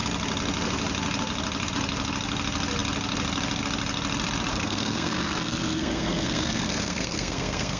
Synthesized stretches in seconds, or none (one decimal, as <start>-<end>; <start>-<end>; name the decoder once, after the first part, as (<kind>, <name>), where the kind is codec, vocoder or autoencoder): 4.5-7.8 (codec, SNAC)